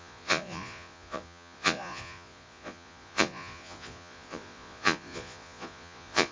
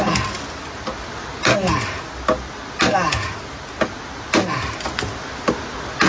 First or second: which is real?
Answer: second